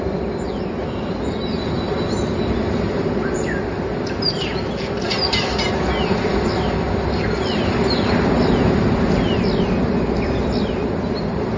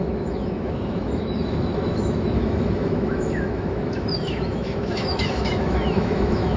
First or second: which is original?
first